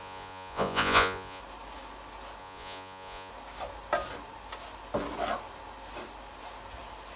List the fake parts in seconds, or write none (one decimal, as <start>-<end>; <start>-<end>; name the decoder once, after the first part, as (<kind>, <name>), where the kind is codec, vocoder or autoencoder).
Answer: 0.0-1.4 (vocoder, Vocos); 2.4-3.3